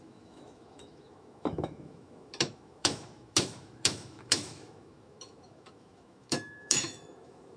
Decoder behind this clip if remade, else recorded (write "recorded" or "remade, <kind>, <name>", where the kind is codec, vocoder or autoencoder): remade, autoencoder, DAC-VAE